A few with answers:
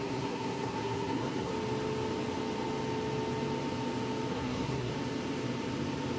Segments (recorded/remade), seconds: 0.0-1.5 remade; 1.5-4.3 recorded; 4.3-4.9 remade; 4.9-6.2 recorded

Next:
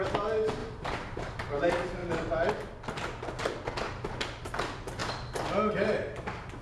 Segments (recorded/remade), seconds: 0.0-0.6 recorded; 0.6-1.2 remade; 1.2-6.6 recorded

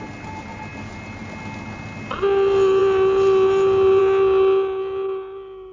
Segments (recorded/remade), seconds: 0.0-5.7 recorded

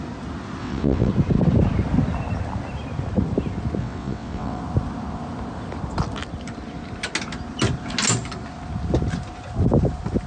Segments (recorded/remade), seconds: 0.0-0.6 recorded; 0.6-1.1 remade; 1.1-3.8 recorded; 3.8-4.6 remade; 4.6-10.3 recorded

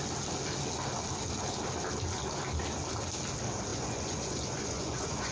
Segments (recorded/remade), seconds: 0.0-3.7 recorded; 3.7-5.3 remade

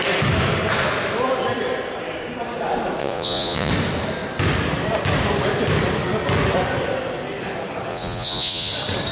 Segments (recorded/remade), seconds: 0.0-3.0 recorded; 3.0-3.7 remade; 3.7-7.9 recorded; 7.9-8.7 remade; 8.7-9.1 recorded

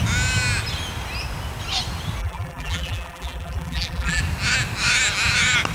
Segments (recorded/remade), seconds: 0.0-2.2 recorded; 2.2-4.2 remade; 4.2-5.7 recorded

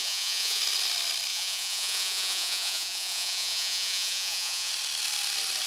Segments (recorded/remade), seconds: 0.0-0.6 remade; 0.6-1.3 recorded; 1.3-4.7 remade; 4.7-5.7 recorded